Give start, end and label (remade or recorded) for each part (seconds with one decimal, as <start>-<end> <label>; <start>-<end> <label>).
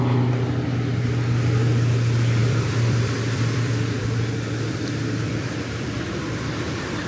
0.0-2.4 recorded; 2.4-5.4 remade; 5.4-7.1 recorded